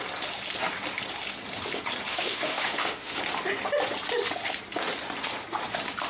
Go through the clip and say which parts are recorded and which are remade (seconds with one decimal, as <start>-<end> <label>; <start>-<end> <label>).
0.0-2.1 recorded; 2.1-3.2 remade; 3.2-6.1 recorded